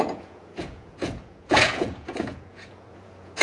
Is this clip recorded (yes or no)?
no